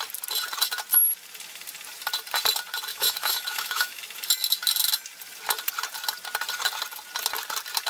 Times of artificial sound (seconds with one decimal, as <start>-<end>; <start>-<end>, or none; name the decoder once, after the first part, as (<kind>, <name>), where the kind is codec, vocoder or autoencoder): 2.9-4.0 (autoencoder, DAC-VAE)